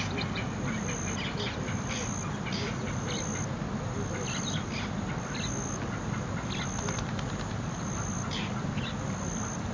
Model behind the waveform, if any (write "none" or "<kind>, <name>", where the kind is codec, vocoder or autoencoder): none